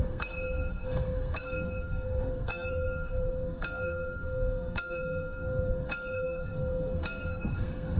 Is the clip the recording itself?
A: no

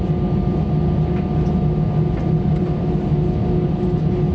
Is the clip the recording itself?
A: yes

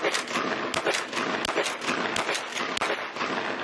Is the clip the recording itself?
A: yes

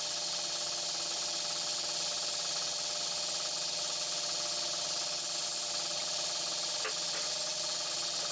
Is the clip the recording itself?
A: yes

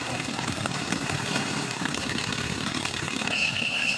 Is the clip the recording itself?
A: no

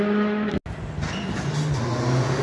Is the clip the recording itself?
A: yes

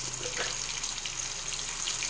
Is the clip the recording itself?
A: yes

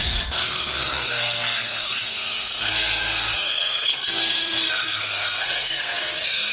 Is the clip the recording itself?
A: no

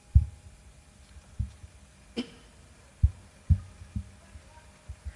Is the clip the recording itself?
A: yes